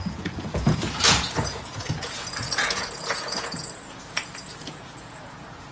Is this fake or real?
fake